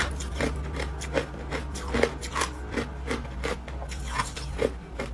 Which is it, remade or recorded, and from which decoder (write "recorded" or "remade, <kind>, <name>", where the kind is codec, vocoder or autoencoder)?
recorded